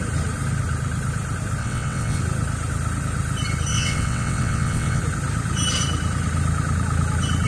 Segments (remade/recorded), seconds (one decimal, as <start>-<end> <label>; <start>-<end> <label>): 0.0-1.6 recorded; 1.6-2.2 remade; 2.2-3.7 recorded; 3.7-5.0 remade; 5.0-7.5 recorded